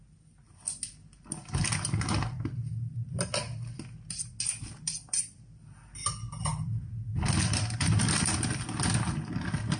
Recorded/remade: recorded